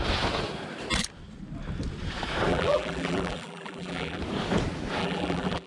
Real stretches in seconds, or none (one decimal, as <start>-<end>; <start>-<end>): 0.0-2.5; 4.2-5.0